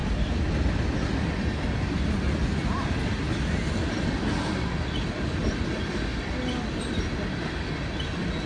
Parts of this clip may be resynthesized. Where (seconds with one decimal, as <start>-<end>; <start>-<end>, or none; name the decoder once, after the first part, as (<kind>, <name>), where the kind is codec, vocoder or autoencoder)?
none